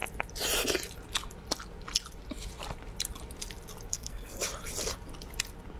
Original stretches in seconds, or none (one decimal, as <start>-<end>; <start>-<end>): 0.0-3.9; 4.4-5.8